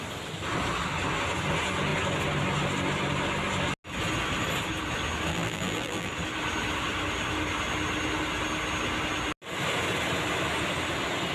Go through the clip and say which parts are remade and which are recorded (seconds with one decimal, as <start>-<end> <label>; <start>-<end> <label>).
0.0-5.3 recorded; 5.3-6.1 remade; 6.1-11.3 recorded